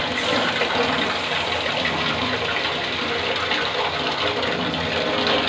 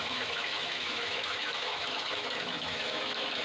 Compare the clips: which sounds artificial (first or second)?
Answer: second